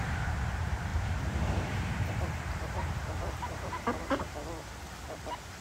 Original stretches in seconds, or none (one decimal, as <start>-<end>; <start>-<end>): 4.4-5.6